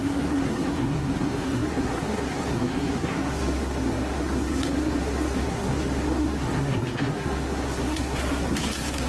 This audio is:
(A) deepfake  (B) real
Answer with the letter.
A